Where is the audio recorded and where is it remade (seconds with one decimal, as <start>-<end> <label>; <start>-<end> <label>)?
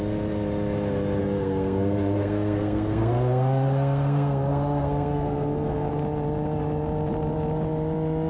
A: 0.0-1.2 recorded; 1.2-5.9 remade; 5.9-8.3 recorded